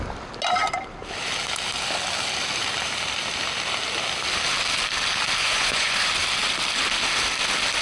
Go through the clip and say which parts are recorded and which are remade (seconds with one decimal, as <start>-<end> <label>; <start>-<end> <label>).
0.0-5.4 recorded; 5.4-6.1 remade; 6.1-7.8 recorded